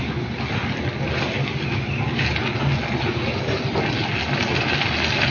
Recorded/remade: recorded